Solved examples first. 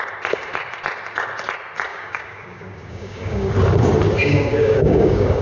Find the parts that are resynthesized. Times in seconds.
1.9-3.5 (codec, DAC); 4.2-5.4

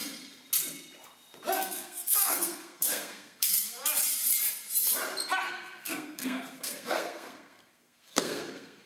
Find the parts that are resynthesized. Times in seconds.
1.6-3.8 (codec, SNAC); 5.5-8.9

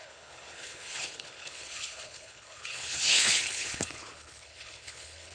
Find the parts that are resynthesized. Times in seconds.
0.0-5.3 (codec, HILCodec)

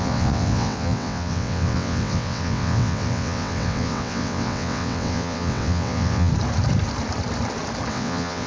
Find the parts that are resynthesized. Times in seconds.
0.0-6.3 (vocoder, WaveNeXt); 7.9-8.5